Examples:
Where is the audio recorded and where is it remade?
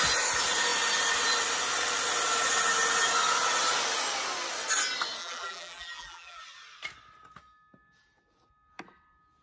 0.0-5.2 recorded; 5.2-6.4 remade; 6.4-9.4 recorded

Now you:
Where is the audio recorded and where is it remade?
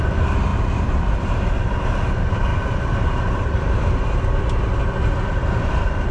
0.0-0.5 recorded; 0.5-1.7 remade; 1.7-2.5 recorded; 2.5-4.4 remade; 4.4-6.1 recorded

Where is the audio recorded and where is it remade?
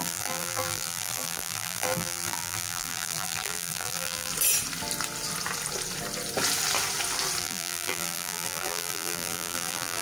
0.0-4.3 remade; 4.3-7.4 recorded; 7.4-10.0 remade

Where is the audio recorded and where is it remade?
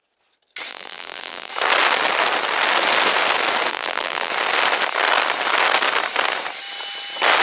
0.0-0.7 recorded; 0.7-1.5 remade; 1.5-3.7 recorded; 3.7-4.3 remade; 4.3-7.4 recorded